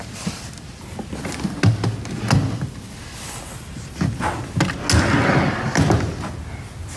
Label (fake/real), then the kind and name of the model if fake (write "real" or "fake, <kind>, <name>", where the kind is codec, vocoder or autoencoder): real